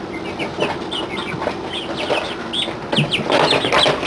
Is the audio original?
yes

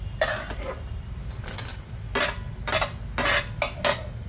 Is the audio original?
yes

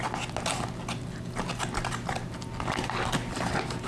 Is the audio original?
yes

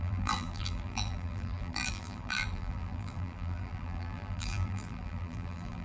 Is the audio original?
no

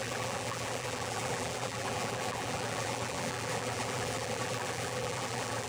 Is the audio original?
no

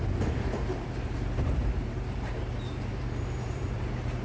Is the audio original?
no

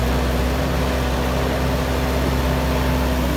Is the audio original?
yes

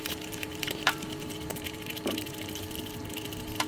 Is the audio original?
no